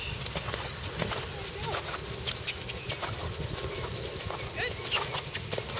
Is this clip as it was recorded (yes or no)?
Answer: yes